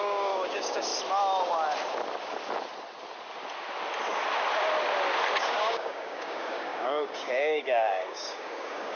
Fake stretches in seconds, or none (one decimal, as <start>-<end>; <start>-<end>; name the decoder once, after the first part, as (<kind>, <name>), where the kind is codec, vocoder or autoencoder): 0.0-0.9 (codec, DAC); 5.4-9.0